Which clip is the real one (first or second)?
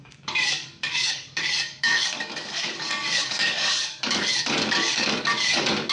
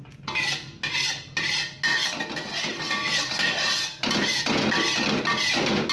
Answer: second